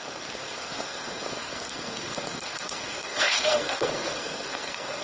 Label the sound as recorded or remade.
remade